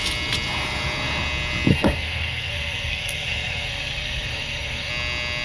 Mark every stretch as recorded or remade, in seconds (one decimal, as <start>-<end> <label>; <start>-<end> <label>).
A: 0.0-1.7 recorded; 1.7-4.9 remade; 4.9-5.4 recorded